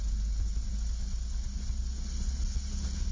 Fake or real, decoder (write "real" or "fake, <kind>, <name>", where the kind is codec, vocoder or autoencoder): real